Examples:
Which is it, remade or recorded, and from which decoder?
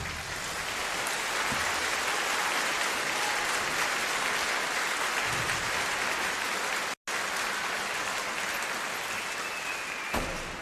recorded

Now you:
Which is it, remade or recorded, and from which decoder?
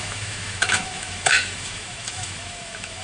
remade, autoencoder, DAC-VAE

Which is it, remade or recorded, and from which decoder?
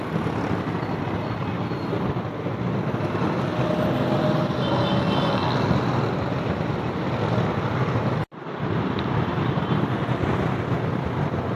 recorded